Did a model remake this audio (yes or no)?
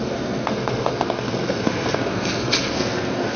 yes